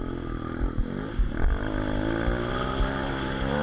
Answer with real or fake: real